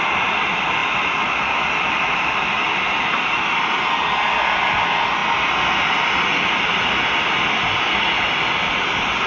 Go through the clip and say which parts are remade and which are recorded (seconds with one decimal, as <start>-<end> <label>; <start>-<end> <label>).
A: 0.0-9.3 recorded